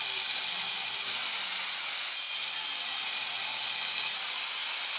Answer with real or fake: fake